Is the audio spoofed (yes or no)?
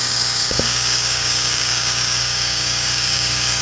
yes